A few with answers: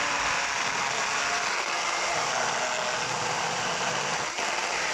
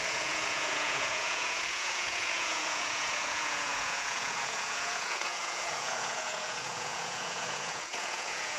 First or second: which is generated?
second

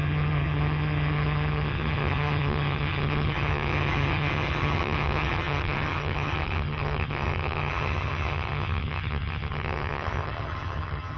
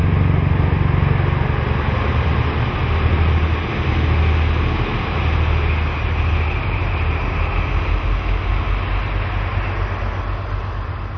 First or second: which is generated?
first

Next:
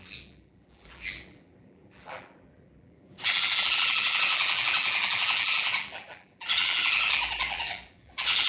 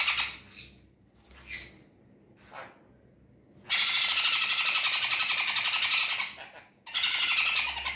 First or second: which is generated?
first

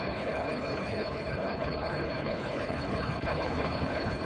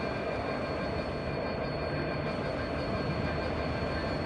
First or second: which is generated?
first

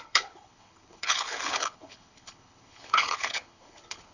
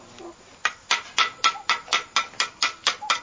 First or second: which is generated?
first